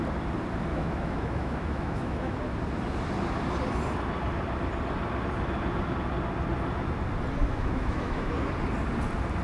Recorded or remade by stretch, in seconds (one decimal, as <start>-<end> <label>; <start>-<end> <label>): 0.0-0.7 recorded; 0.7-2.4 remade; 2.4-7.4 recorded; 7.4-8.3 remade; 8.3-9.4 recorded